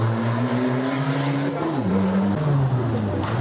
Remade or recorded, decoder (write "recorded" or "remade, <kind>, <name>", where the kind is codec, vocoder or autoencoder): recorded